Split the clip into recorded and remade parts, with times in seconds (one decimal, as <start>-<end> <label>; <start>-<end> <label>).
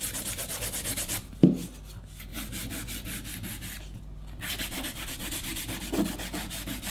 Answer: 0.0-6.9 recorded